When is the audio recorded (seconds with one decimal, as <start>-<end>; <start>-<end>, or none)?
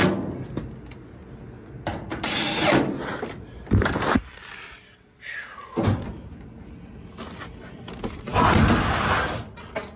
0.0-10.0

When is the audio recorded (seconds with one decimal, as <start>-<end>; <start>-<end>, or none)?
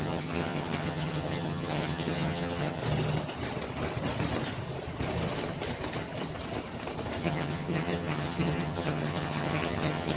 2.8-7.2